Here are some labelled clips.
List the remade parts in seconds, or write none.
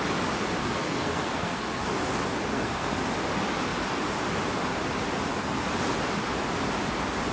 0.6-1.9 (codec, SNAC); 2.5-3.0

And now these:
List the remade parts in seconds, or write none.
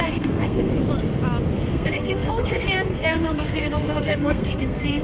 0.0-0.7 (codec, SNAC); 1.7-5.0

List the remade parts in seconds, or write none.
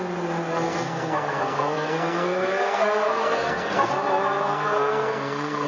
0.5-3.9 (codec, SNAC); 4.4-5.7